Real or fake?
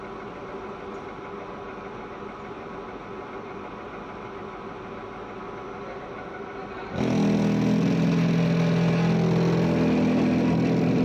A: real